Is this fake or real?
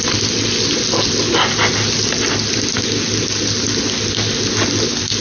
real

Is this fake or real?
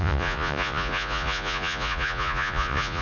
fake